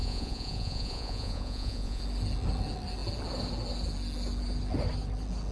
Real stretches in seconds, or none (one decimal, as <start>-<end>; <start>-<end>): 2.0-5.5